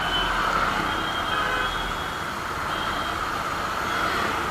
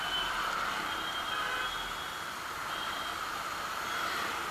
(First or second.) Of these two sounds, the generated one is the second